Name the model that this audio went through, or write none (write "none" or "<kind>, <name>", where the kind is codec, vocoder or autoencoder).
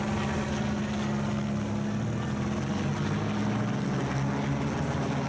none